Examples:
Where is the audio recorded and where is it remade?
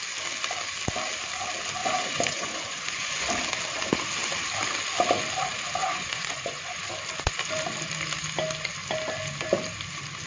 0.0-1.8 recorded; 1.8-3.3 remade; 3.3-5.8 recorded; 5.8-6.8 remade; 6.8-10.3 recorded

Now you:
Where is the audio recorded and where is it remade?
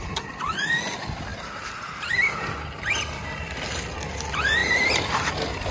0.0-5.7 recorded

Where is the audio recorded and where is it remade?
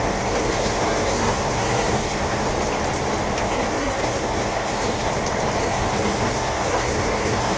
0.0-2.5 remade; 2.5-3.4 recorded; 3.4-5.1 remade; 5.1-5.6 recorded; 5.6-7.6 remade